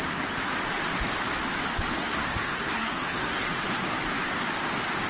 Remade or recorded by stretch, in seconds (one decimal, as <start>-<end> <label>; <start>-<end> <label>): 0.0-2.0 recorded; 2.0-3.5 remade; 3.5-5.1 recorded